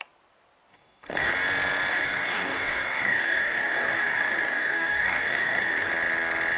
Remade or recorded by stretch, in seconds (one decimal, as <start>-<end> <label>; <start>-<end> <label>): 0.0-0.7 recorded; 0.7-1.3 remade; 1.3-1.9 recorded; 1.9-5.9 remade; 5.9-6.6 recorded